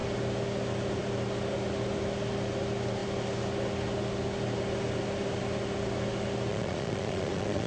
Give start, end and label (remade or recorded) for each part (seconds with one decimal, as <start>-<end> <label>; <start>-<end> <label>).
0.0-6.5 recorded; 6.5-7.7 remade